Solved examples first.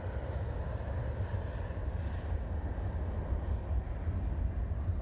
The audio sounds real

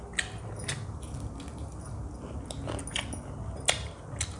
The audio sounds real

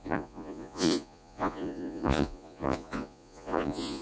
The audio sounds fake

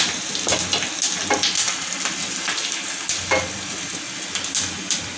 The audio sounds real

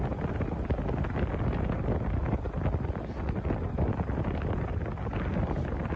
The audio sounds real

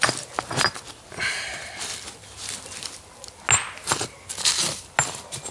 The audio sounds real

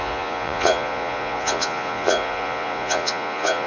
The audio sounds fake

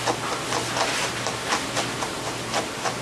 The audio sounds real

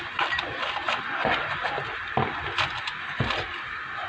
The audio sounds fake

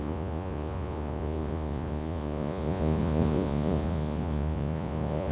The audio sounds fake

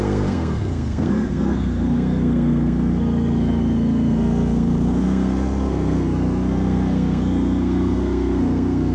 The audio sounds fake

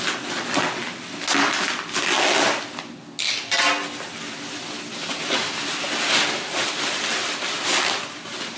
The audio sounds real